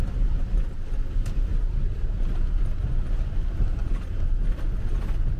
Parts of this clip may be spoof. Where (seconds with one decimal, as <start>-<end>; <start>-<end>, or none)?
3.8-4.8